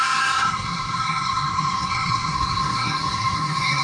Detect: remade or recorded remade